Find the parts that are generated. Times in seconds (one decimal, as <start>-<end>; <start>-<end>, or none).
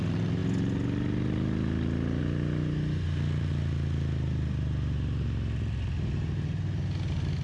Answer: none